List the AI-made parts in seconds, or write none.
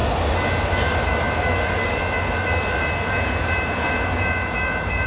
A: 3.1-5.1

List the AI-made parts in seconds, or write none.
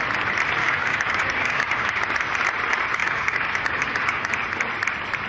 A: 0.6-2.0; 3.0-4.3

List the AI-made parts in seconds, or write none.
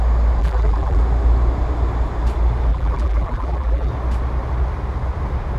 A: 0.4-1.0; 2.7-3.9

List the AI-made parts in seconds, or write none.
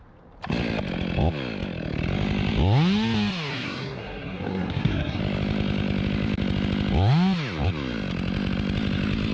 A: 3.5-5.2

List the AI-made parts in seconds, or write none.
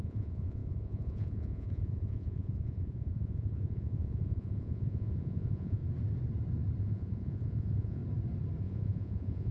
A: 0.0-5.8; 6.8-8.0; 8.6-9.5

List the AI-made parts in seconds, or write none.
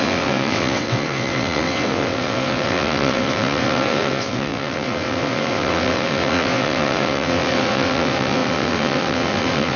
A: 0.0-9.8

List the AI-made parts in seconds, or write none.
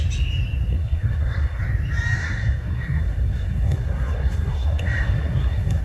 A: 0.7-1.6; 2.2-5.8